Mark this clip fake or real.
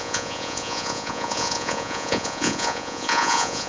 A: fake